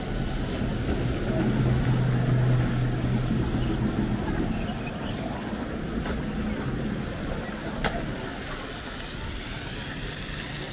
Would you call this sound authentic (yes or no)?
yes